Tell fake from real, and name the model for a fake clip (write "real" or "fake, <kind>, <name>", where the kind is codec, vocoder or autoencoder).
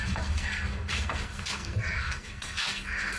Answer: fake, codec, SNAC